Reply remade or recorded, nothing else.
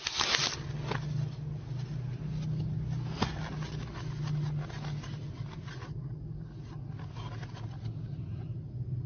recorded